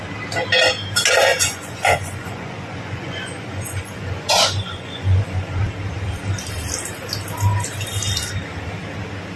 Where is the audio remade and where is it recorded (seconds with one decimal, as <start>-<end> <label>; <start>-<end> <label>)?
0.0-1.3 recorded; 1.3-5.6 remade; 5.6-9.4 recorded